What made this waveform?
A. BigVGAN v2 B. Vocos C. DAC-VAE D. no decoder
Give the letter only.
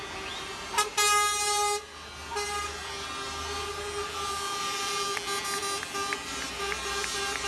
D